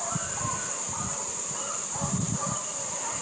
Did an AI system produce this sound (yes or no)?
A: no